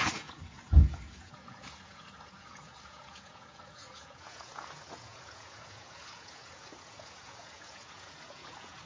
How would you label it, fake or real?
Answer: fake